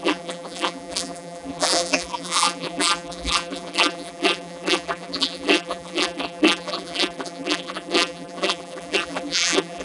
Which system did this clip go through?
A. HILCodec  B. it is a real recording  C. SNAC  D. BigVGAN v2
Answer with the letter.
D